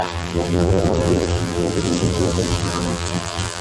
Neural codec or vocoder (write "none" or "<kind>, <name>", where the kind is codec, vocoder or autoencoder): vocoder, BigVGAN v2